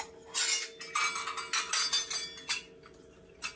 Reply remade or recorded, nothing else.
recorded